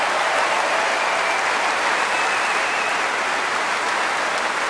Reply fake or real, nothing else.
real